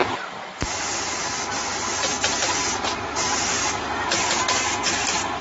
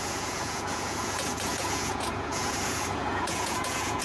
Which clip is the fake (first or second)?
second